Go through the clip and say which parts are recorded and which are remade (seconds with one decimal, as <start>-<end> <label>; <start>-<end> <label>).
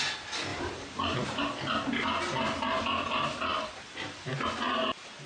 0.0-0.5 recorded; 0.5-1.4 remade; 1.4-3.5 recorded; 3.5-4.3 remade; 4.3-5.3 recorded